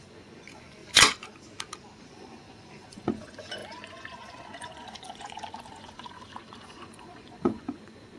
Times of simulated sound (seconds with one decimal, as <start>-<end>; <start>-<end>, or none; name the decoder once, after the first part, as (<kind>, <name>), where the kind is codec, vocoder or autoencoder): 0.0-0.8 (vocoder, Vocos); 2.0-8.2